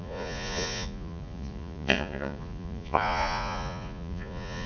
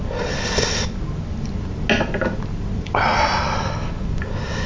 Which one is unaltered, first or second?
second